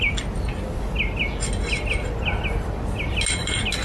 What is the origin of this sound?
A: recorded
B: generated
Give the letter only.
A